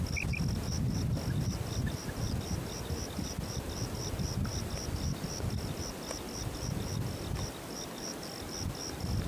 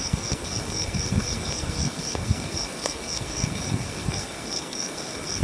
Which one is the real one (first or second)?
first